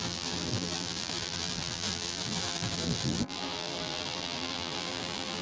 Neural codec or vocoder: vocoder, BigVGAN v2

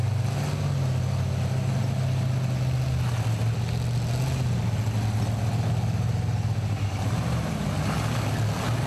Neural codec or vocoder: none